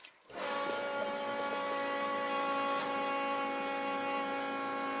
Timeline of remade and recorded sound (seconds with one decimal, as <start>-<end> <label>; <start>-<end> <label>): 0.0-5.0 recorded